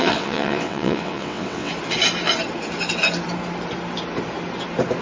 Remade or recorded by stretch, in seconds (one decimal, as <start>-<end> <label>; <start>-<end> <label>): 0.0-1.7 remade; 1.7-5.0 recorded